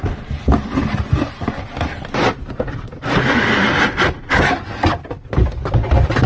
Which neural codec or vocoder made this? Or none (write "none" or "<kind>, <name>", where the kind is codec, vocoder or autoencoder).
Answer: none